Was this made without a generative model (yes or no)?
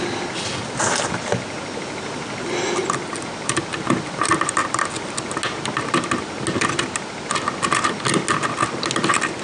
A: yes